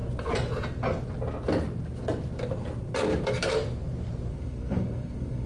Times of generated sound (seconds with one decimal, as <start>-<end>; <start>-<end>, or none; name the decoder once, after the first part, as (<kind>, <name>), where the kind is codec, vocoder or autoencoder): 4.3-5.5 (codec, SNAC)